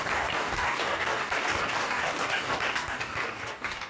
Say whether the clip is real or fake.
fake